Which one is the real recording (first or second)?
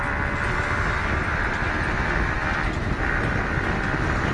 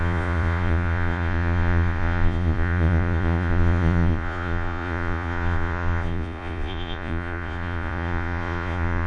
first